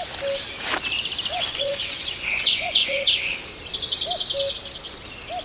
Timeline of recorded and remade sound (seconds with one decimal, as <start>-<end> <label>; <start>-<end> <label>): 0.0-1.3 recorded; 1.3-3.3 remade; 3.3-5.4 recorded